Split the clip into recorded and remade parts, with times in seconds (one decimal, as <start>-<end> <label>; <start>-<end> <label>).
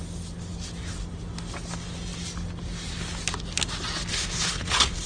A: 0.0-4.1 recorded; 4.1-5.1 remade